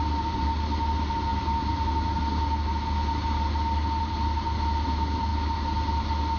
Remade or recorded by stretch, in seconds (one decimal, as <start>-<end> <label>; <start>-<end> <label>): 0.0-6.4 recorded